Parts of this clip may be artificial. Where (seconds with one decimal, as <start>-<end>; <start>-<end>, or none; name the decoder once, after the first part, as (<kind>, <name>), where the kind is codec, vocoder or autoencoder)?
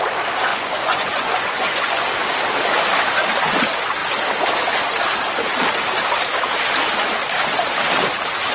0.5-2.1 (vocoder, Vocos)